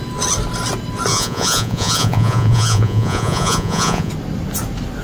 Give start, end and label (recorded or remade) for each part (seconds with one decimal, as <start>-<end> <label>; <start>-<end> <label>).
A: 0.0-1.1 recorded; 1.1-4.1 remade; 4.1-5.0 recorded